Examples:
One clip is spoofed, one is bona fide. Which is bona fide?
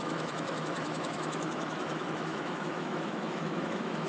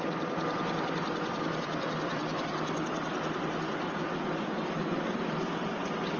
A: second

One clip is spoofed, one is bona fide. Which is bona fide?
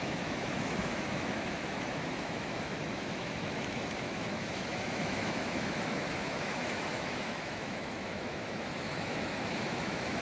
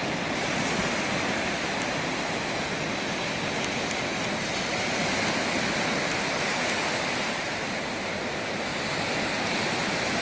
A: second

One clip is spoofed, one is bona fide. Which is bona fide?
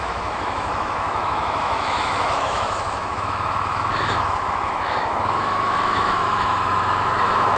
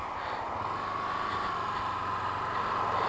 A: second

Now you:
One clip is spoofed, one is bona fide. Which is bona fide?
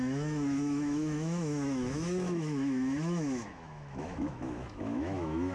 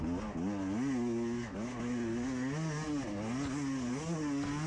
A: second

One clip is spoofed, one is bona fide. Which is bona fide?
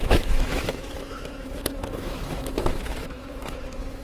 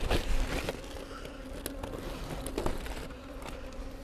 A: second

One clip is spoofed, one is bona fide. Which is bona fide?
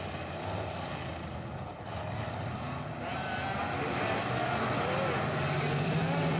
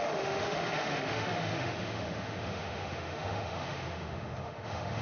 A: first